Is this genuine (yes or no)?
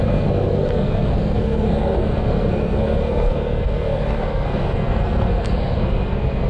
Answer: no